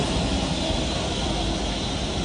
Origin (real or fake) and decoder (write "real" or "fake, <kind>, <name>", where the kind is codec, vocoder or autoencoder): real